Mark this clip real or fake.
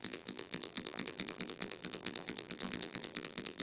fake